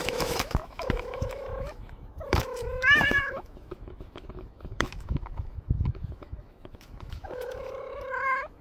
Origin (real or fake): fake